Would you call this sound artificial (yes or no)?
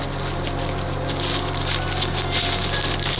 no